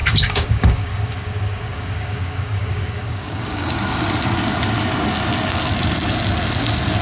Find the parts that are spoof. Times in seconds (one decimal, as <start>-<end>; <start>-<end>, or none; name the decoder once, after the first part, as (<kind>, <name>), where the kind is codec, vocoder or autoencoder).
0.0-3.7 (codec, DAC)